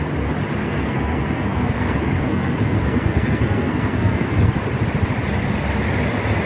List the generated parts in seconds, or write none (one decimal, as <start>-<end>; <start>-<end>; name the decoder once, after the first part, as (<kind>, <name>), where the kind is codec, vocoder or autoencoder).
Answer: 0.6-4.5 (codec, SNAC)